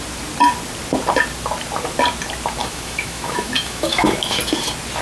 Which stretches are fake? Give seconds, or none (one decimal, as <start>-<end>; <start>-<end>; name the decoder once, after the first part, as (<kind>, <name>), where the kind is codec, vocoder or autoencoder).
2.6-4.4 (autoencoder, DAC-VAE)